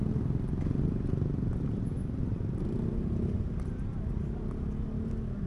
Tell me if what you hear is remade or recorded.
recorded